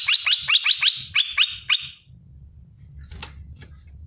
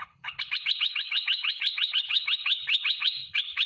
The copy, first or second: second